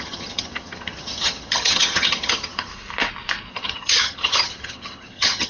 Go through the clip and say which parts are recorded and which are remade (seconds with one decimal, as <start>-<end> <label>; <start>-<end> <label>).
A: 0.0-2.7 remade; 2.7-3.5 recorded; 3.5-5.5 remade